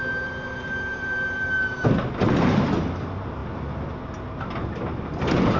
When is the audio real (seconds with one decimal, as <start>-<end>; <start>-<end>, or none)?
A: 0.0-5.6